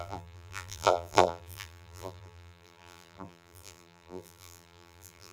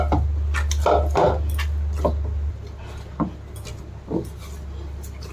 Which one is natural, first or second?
second